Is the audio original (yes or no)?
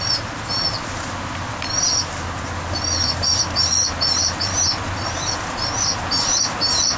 yes